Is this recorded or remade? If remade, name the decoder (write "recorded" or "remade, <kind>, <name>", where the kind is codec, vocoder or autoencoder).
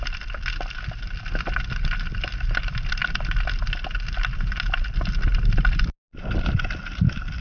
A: recorded